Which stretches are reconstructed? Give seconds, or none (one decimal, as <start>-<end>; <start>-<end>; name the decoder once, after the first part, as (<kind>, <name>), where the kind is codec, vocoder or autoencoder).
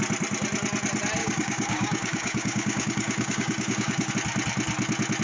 1.2-4.1 (codec, DAC)